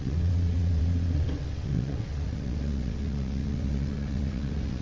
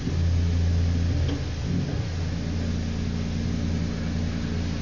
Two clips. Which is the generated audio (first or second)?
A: first